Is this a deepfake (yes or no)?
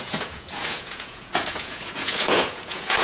yes